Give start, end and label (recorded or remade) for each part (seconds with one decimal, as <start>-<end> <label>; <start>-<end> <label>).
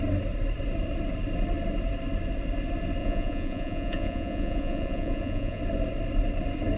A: 0.0-3.0 recorded; 3.0-5.6 remade; 5.6-6.8 recorded